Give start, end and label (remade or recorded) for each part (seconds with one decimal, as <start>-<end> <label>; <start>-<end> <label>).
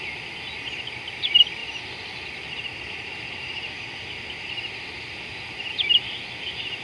0.0-6.8 recorded